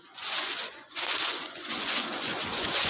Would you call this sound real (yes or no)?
no